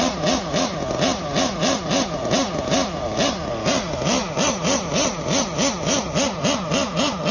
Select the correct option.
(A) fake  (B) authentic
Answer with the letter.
B